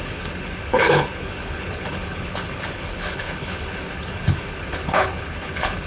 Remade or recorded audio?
remade